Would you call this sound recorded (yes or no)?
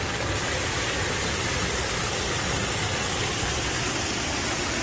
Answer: yes